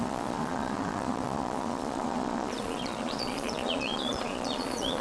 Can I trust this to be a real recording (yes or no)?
no